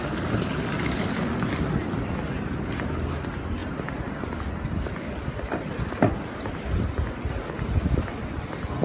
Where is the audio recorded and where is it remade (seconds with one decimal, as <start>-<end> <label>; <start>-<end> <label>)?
0.0-8.8 recorded